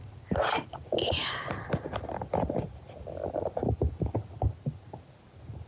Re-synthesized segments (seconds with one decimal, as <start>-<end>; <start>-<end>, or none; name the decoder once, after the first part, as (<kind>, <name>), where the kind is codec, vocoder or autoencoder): none